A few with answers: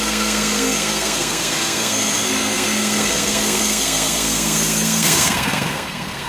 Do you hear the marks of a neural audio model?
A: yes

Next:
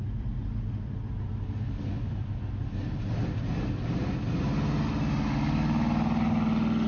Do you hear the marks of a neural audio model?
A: no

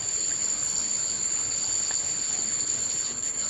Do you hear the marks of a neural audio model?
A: yes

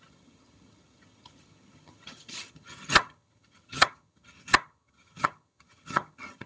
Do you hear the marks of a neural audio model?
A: yes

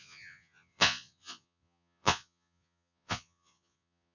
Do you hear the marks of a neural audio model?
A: yes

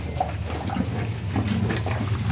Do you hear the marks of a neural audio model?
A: no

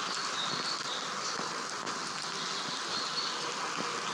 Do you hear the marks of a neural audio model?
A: no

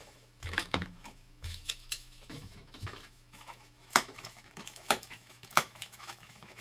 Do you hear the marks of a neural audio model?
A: yes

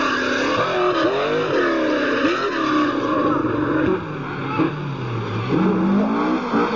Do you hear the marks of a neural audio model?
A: no